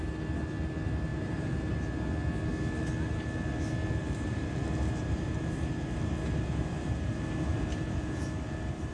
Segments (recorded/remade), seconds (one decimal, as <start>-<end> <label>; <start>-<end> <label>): 0.0-1.1 recorded; 1.1-1.7 remade; 1.7-4.0 recorded; 4.0-8.9 remade